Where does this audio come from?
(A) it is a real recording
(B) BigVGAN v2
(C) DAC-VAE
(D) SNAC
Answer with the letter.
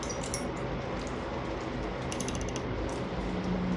A